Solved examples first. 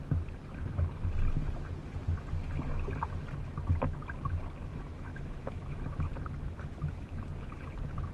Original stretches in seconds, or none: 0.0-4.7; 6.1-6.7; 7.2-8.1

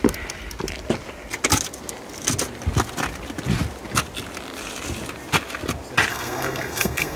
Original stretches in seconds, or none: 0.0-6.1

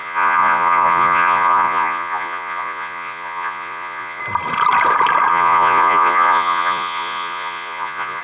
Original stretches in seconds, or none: 4.2-5.3

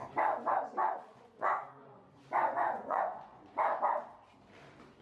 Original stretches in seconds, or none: 0.0-0.8; 3.8-5.0

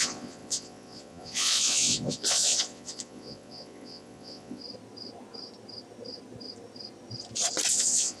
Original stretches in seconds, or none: 4.6-7.7